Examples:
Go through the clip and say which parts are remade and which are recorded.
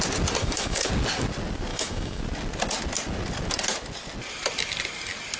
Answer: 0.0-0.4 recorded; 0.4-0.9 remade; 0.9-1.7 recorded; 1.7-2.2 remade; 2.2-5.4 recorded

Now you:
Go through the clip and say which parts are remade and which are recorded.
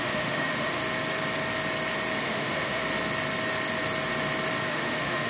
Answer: 0.0-0.8 remade; 0.8-2.2 recorded; 2.2-2.8 remade; 2.8-4.7 recorded; 4.7-5.3 remade